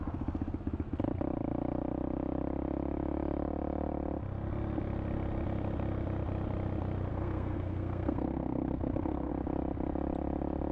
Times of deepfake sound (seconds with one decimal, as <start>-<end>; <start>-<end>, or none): 7.1-9.3